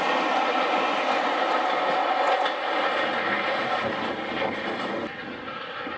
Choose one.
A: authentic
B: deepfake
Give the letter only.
A